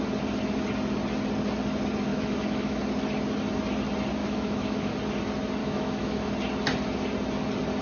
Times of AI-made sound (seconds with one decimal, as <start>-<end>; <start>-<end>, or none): 2.1-2.8; 4.2-4.9; 5.6-6.3